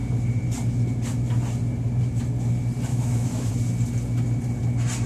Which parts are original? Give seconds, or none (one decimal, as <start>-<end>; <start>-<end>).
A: 0.0-2.9; 3.5-5.1